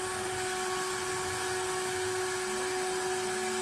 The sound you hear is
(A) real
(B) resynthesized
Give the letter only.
A